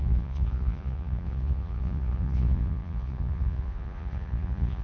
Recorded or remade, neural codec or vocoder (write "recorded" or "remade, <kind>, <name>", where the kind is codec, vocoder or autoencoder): remade, vocoder, Vocos